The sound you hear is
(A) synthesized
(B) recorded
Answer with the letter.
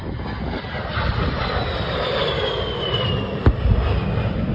B